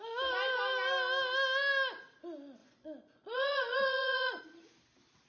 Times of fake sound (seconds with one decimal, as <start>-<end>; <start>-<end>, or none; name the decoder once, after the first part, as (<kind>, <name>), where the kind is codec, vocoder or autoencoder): 2.6-4.4 (vocoder, Vocos)